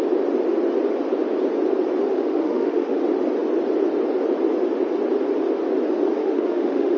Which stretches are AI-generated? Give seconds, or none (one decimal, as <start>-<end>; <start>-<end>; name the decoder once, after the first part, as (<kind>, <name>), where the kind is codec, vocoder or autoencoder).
2.1-3.0 (autoencoder, DAC-VAE); 6.2-7.0